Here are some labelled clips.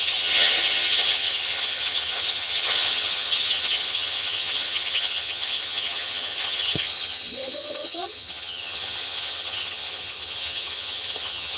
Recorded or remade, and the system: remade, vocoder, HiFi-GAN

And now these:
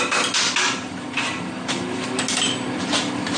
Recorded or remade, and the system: recorded